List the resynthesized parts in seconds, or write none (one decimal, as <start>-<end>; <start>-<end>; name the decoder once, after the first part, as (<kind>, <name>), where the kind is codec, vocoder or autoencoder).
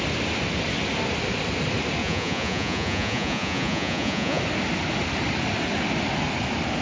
2.0-4.4 (vocoder, Vocos)